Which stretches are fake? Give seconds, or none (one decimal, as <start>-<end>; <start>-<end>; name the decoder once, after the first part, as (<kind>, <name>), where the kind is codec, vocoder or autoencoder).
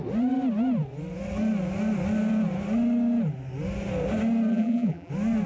4.5-5.1 (vocoder, BigVGAN v2)